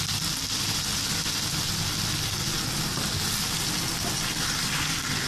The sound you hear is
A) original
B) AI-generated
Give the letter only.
A